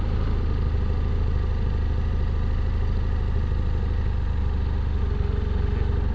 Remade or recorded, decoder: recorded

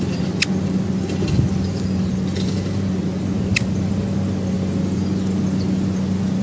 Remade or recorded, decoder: recorded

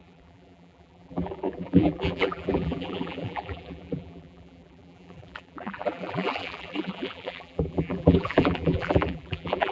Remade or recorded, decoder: remade, vocoder, BigVGAN v2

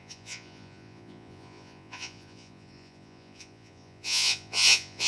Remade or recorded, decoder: remade, vocoder, Vocos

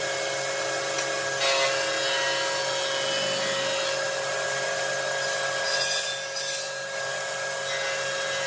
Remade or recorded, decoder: recorded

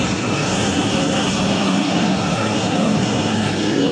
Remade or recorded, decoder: remade, codec, SNAC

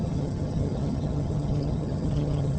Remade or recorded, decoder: remade, vocoder, HiFi-GAN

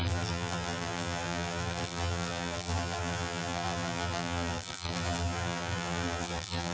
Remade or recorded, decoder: remade, vocoder, BigVGAN v2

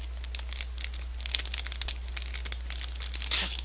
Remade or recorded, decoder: recorded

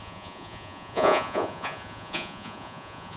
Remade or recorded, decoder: remade, vocoder, Vocos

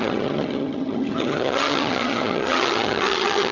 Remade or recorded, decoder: remade, vocoder, HiFi-GAN